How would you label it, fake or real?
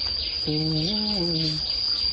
real